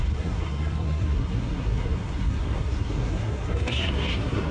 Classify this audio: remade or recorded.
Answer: remade